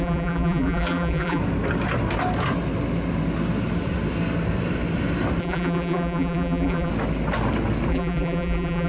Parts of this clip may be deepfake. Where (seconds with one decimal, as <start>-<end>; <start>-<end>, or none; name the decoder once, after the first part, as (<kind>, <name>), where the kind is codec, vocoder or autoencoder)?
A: 0.0-1.4 (vocoder, BigVGAN v2); 5.4-6.9; 7.9-8.9